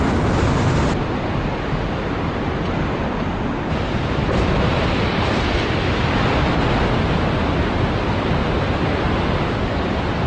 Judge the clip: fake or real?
real